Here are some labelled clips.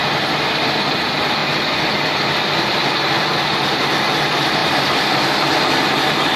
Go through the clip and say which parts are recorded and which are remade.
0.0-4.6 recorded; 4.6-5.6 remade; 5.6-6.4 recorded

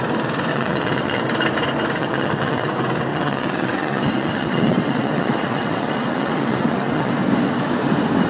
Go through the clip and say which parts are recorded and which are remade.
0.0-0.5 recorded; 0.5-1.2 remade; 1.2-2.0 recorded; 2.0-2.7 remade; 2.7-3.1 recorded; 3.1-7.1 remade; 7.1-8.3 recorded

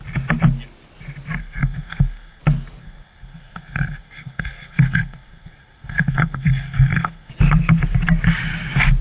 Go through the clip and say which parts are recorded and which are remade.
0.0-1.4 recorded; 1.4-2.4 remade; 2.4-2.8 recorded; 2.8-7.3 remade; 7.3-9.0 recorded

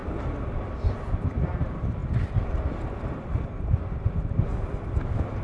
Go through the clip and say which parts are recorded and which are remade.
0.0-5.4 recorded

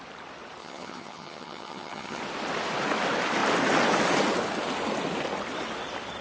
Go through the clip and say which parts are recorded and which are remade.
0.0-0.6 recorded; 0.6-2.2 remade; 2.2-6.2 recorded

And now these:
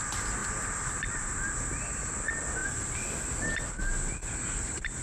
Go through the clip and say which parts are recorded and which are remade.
0.0-0.4 recorded; 0.4-1.3 remade; 1.3-2.6 recorded; 2.6-3.3 remade; 3.3-5.0 recorded

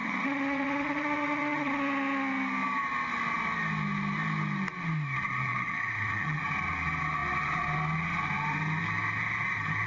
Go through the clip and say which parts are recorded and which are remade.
0.0-1.7 remade; 1.7-5.5 recorded; 5.5-6.4 remade; 6.4-9.9 recorded